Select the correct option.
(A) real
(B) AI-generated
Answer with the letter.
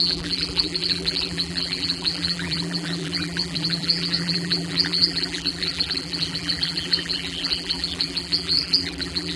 B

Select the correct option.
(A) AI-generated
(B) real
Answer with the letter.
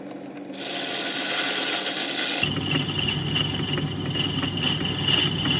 B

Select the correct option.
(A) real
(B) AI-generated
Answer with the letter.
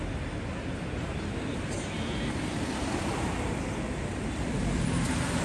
A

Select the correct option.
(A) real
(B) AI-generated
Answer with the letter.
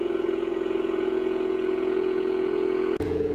B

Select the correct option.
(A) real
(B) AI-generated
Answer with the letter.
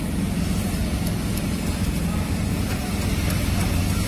A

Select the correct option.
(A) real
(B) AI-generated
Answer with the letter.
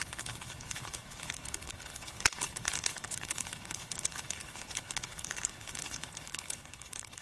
B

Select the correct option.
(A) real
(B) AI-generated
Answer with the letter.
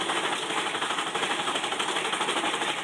B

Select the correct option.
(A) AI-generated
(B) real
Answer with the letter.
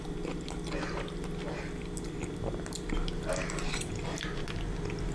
B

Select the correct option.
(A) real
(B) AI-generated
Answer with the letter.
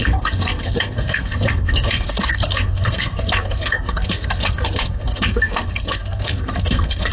B